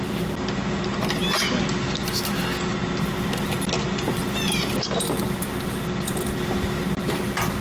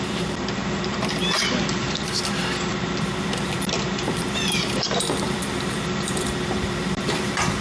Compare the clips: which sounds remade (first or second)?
second